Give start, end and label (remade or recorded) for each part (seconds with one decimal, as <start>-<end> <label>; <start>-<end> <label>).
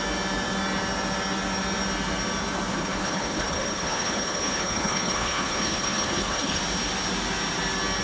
0.0-2.7 recorded; 2.7-6.6 remade; 6.6-8.0 recorded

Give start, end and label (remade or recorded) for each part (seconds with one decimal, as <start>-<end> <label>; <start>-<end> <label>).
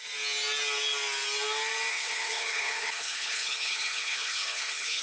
0.0-1.9 recorded; 1.9-5.0 remade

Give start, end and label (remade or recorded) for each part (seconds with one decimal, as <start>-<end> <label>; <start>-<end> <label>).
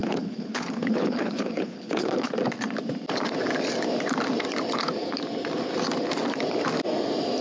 0.0-2.3 remade; 2.3-7.4 recorded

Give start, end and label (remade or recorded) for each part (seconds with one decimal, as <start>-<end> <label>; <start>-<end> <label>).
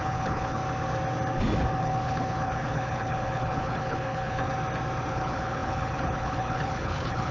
0.0-0.6 remade; 0.6-1.8 recorded; 1.8-4.5 remade; 4.5-5.1 recorded; 5.1-7.3 remade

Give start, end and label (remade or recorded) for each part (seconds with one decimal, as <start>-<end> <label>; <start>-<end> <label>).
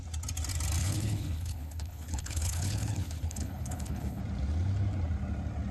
0.0-0.8 recorded; 0.8-4.2 remade; 4.2-5.7 recorded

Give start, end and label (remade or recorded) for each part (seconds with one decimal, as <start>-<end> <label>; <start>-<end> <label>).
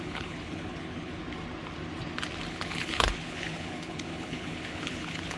0.0-1.2 remade; 1.2-2.5 recorded; 2.5-5.4 remade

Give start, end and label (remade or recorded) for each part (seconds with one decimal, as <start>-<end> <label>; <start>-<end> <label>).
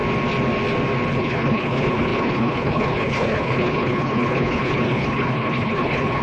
0.0-1.1 recorded; 1.1-6.2 remade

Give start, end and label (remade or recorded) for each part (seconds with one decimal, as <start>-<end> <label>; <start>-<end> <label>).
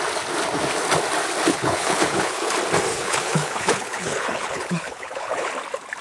0.0-1.5 recorded; 1.5-2.5 remade; 2.5-2.9 recorded; 2.9-5.5 remade; 5.5-6.0 recorded